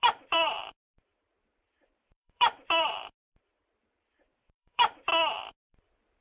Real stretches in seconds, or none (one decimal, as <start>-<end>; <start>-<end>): 5.1-5.6